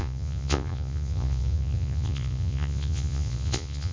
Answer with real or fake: fake